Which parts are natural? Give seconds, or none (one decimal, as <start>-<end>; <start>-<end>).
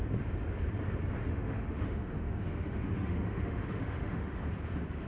0.0-1.3; 4.4-5.1